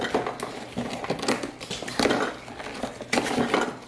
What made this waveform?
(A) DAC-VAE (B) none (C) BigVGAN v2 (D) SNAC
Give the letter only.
B